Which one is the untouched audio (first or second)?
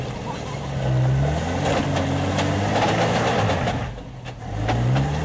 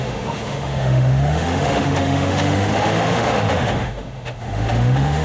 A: first